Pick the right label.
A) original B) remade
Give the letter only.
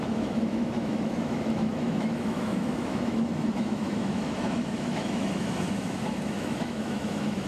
B